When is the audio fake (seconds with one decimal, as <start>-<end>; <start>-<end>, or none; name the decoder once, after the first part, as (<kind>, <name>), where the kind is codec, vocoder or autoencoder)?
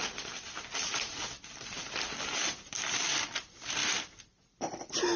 none